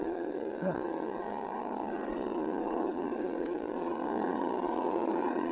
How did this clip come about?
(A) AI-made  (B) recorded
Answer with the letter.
A